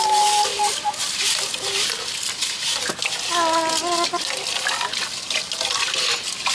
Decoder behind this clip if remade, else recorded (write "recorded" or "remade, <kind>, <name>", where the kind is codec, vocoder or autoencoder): recorded